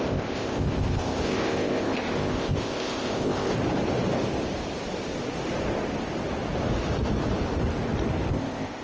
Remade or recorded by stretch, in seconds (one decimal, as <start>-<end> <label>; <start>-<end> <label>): 0.0-3.5 remade; 3.5-8.3 recorded; 8.3-8.8 remade